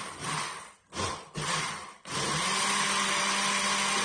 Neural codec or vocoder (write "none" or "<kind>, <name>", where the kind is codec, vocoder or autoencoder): none